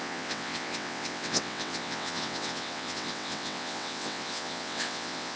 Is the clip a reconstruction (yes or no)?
yes